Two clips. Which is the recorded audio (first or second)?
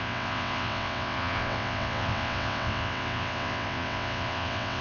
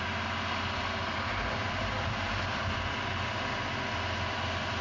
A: second